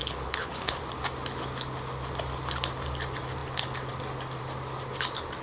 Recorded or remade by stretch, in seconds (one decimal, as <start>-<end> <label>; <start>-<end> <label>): 0.0-0.7 remade; 0.7-5.4 recorded